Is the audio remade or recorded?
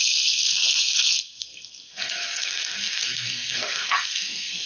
remade